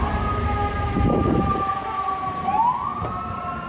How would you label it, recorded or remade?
recorded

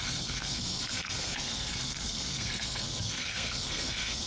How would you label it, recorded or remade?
remade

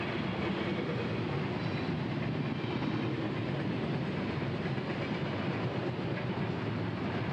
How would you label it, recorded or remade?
recorded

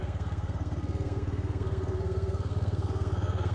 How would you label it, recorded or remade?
remade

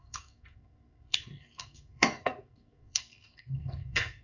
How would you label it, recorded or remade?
remade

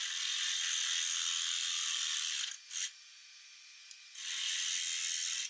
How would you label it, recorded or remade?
recorded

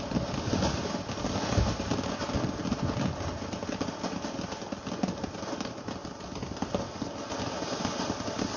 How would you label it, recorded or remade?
recorded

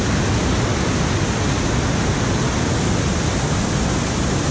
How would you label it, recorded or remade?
recorded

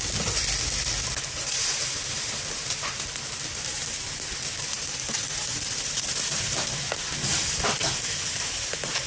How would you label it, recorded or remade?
recorded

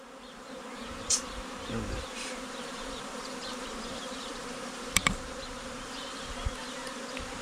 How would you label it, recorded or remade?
remade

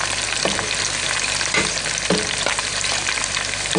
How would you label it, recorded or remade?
remade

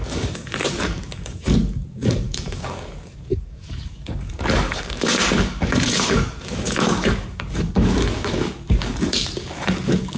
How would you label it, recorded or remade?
remade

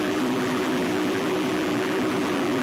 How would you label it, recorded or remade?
remade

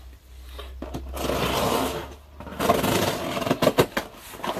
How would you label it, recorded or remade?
recorded